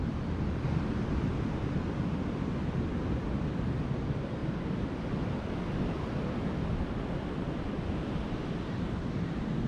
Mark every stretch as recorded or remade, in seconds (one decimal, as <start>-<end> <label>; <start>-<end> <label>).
0.0-9.7 recorded